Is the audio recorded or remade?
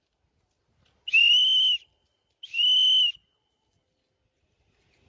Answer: recorded